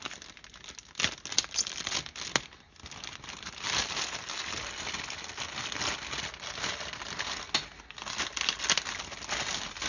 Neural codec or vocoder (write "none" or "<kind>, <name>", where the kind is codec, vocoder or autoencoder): none